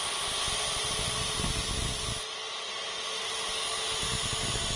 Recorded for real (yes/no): yes